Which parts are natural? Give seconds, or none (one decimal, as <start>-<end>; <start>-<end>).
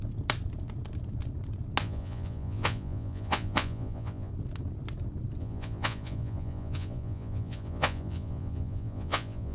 0.0-1.8; 4.3-5.4